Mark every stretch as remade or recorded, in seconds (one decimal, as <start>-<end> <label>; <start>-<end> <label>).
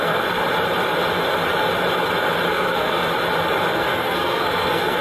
0.0-0.4 remade; 0.4-2.5 recorded; 2.5-3.0 remade; 3.0-3.7 recorded; 3.7-5.0 remade